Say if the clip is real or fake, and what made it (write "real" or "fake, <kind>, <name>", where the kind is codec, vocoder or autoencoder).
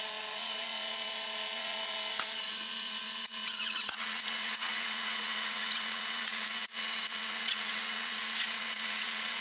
fake, vocoder, WaveNeXt